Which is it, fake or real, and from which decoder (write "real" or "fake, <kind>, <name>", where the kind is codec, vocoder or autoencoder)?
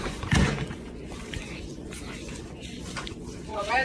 fake, vocoder, Vocos